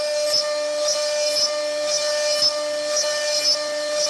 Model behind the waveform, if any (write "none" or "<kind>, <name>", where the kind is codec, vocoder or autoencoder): none